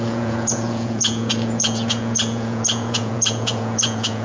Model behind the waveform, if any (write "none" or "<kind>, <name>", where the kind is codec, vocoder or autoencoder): vocoder, Vocos